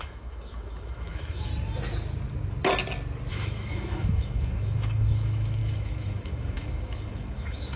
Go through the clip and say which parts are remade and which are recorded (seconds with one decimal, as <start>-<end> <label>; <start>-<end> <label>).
0.0-1.5 remade; 1.5-3.3 recorded; 3.3-7.8 remade